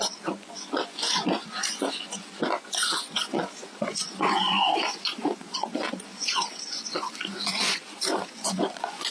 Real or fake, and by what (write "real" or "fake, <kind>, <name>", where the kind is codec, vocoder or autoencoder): fake, vocoder, Vocos